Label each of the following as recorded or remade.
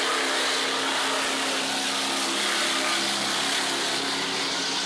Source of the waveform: recorded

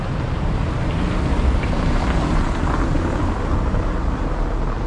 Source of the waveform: recorded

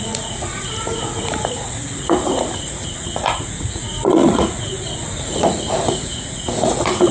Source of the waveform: remade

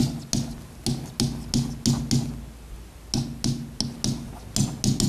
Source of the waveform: recorded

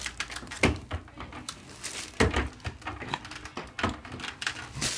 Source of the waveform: recorded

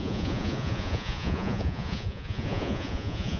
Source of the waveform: remade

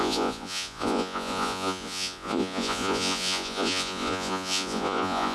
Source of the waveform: remade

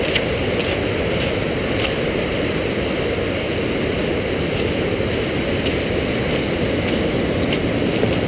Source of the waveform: recorded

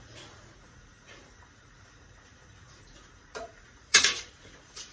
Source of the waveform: remade